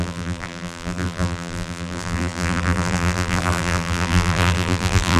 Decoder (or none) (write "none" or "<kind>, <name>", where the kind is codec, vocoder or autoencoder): vocoder, BigVGAN v2